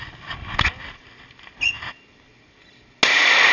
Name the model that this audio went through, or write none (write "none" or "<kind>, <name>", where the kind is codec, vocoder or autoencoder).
none